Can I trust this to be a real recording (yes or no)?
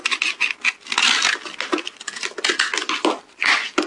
yes